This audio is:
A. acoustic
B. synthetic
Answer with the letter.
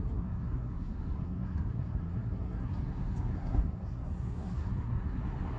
B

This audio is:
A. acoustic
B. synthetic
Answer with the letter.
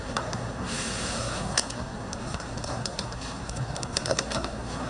B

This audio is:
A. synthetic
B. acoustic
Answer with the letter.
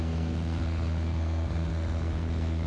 A